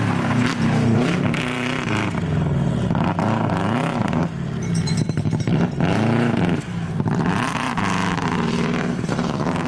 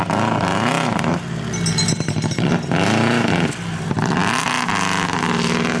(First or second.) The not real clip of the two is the first